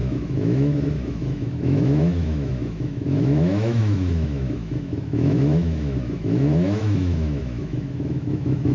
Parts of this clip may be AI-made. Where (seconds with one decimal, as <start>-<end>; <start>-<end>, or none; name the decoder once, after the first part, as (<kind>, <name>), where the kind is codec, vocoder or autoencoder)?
0.0-8.7 (autoencoder, DAC-VAE)